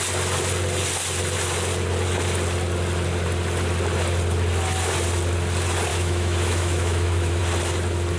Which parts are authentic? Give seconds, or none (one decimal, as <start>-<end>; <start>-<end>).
0.0-5.9; 7.4-8.2